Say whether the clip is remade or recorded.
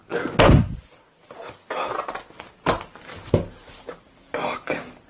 recorded